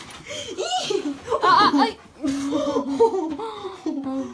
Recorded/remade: recorded